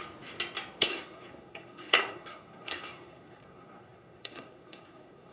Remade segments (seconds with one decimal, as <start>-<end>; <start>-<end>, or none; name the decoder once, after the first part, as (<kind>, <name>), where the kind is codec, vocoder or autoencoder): 0.8-5.3 (codec, SNAC)